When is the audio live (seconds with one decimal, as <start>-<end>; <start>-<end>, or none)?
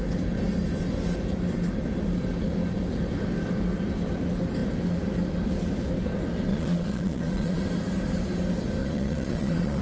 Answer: 0.0-6.5; 7.6-8.8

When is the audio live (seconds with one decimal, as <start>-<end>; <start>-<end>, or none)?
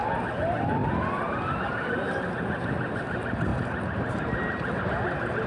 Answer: 0.0-5.5